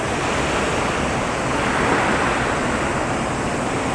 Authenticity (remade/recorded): recorded